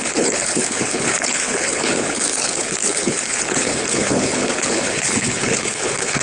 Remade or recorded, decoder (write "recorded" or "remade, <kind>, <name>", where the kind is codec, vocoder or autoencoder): remade, codec, HILCodec